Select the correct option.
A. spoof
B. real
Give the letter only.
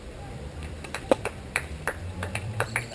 A